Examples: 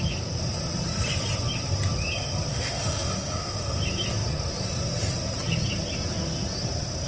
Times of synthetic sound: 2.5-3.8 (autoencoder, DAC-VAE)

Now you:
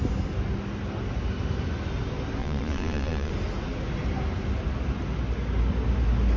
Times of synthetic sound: 2.4-3.3 (vocoder, Vocos)

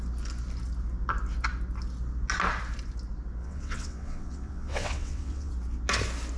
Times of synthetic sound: 3.4-5.5 (vocoder, WaveNeXt)

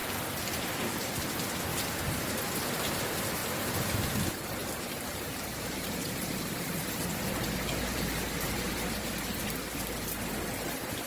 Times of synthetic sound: 0.0-1.1 (vocoder, BigVGAN v2); 1.7-2.4; 4.6-7.0

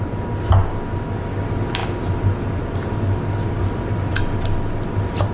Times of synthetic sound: none

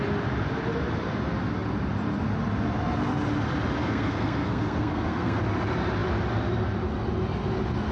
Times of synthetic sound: 3.8-5.4 (codec, SNAC)

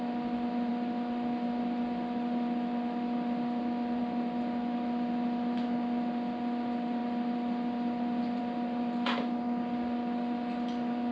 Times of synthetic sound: none